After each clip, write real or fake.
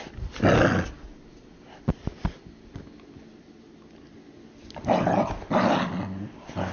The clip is real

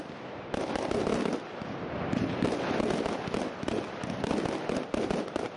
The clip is real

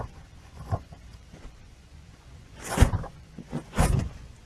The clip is fake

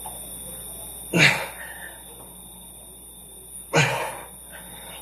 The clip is real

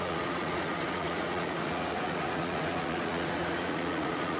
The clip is fake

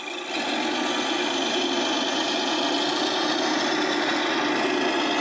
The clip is real